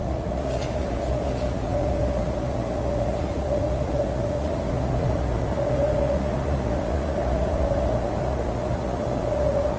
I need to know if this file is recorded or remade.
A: remade